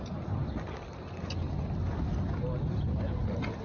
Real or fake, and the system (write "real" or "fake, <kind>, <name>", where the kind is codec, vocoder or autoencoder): real